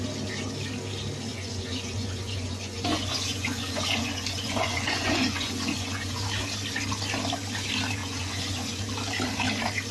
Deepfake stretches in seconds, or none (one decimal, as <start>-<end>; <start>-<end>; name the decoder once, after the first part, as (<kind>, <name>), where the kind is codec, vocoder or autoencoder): 1.3-6.2 (vocoder, Vocos); 8.0-8.8